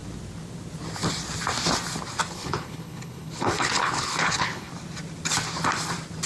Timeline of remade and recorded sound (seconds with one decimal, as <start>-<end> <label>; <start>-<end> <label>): 0.0-2.3 recorded; 2.3-4.7 remade; 4.7-6.3 recorded